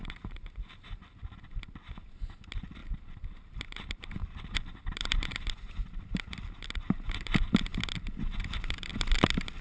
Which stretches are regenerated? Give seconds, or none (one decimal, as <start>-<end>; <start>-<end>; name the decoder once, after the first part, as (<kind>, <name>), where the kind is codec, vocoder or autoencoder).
0.0-1.1 (vocoder, BigVGAN v2); 2.8-5.4